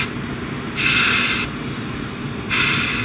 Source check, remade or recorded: recorded